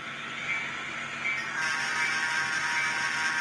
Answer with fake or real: real